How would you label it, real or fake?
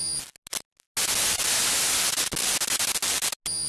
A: real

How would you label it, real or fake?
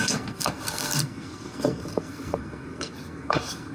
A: fake